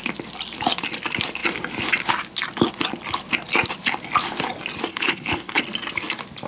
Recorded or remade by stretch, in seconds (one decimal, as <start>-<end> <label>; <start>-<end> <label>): 0.0-4.9 recorded; 4.9-5.6 remade; 5.6-6.5 recorded